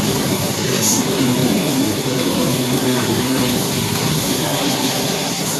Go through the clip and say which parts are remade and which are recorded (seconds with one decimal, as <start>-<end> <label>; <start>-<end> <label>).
0.0-5.6 remade